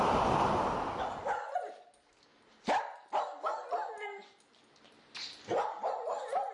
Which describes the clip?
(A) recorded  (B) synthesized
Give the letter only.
A